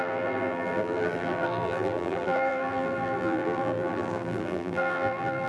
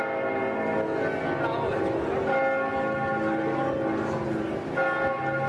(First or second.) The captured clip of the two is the second